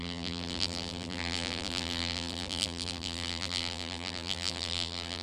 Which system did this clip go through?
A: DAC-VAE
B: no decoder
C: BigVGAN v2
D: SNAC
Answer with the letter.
C